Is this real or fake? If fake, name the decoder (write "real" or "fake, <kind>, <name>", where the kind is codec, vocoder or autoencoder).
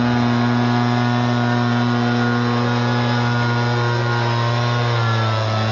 real